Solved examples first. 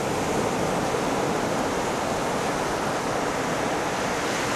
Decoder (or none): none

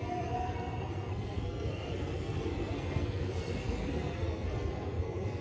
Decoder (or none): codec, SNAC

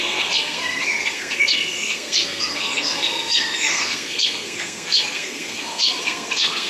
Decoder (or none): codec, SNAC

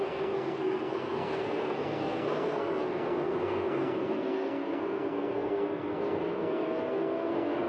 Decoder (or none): codec, SNAC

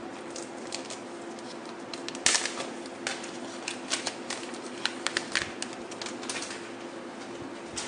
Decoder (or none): none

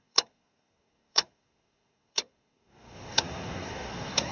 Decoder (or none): codec, SNAC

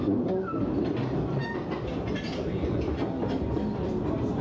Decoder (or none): none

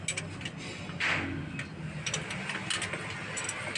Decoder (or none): none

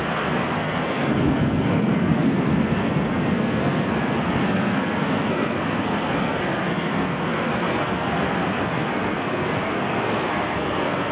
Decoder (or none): codec, SNAC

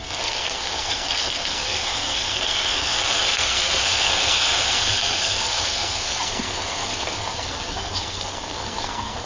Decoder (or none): codec, SNAC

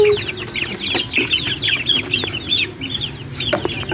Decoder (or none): none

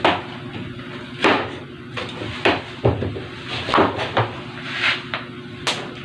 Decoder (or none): none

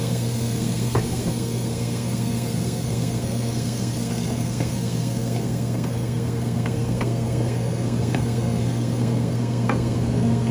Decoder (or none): codec, SNAC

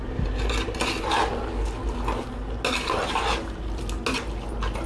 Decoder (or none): none